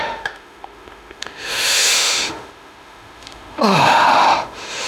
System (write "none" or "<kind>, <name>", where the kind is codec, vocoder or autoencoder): autoencoder, DAC-VAE